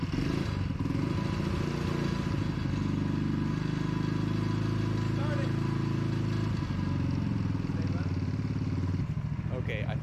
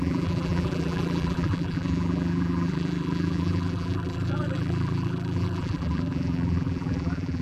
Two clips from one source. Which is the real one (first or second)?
first